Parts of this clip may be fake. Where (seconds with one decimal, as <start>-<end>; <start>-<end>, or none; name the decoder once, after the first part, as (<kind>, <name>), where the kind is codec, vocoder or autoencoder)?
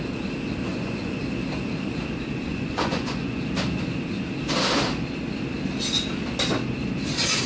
0.7-1.2 (vocoder, Vocos); 2.5-3.4